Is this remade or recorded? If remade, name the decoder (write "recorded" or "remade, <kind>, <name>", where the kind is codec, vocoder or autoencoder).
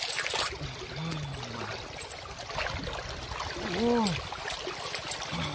recorded